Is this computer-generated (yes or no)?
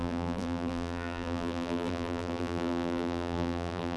yes